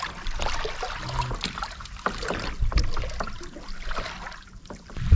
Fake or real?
real